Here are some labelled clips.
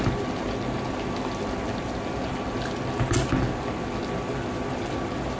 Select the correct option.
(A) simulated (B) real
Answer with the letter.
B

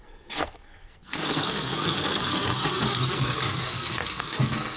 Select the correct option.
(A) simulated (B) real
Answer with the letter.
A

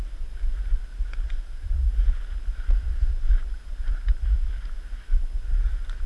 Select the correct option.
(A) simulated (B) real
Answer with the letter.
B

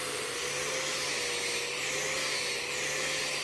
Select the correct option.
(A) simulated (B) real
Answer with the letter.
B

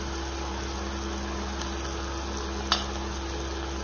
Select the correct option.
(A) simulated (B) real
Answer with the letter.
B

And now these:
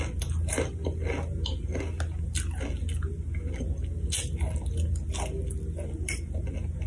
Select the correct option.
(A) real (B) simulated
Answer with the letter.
A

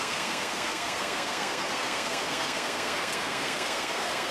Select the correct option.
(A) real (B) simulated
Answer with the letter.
B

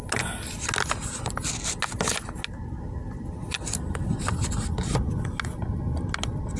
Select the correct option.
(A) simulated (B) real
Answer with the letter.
B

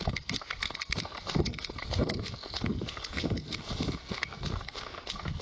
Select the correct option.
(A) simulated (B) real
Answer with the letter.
A